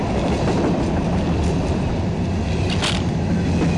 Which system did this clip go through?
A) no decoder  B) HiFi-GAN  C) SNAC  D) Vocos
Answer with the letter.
A